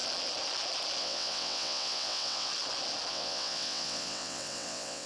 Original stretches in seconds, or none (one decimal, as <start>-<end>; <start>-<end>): 0.0-1.0; 2.5-3.1